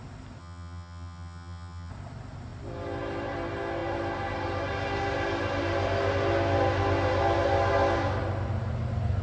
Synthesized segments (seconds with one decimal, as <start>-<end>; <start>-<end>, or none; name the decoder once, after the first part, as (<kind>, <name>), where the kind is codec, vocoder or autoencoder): 0.4-1.9 (vocoder, HiFi-GAN)